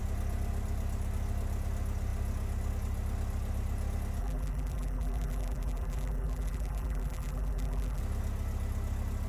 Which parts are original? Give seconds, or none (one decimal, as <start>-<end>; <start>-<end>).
0.0-4.2; 8.0-9.3